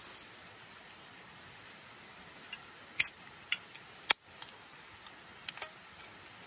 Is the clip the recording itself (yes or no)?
yes